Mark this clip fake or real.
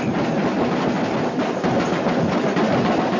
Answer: real